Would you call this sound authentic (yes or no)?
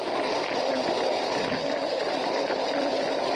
yes